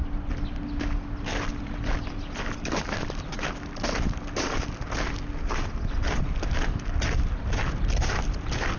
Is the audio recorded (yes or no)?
yes